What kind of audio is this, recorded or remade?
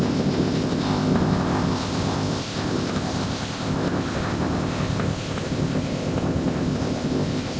remade